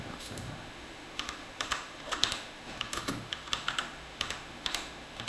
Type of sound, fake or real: fake